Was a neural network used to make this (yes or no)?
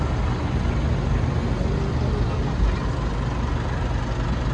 no